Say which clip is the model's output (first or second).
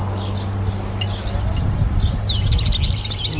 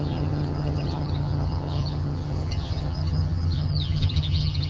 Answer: second